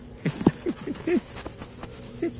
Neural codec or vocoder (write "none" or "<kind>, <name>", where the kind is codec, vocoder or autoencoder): none